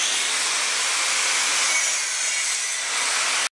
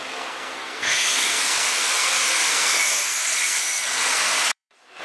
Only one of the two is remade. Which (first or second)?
second